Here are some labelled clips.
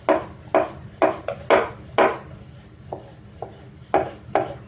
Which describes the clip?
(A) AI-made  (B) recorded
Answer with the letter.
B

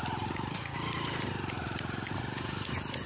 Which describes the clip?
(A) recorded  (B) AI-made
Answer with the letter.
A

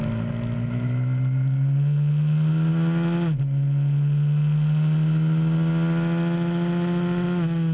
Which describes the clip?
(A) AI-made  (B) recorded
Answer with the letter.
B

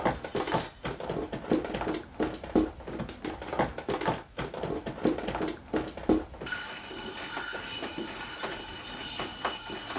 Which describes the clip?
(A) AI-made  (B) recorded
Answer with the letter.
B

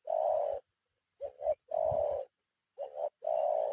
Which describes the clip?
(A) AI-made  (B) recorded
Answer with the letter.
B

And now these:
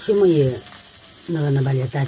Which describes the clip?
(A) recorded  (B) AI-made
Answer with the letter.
A